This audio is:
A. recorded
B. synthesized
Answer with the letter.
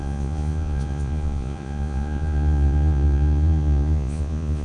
B